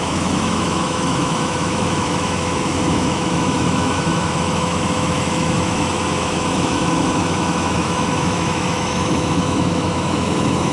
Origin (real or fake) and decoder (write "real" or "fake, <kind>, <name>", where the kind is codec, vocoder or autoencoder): fake, autoencoder, DAC-VAE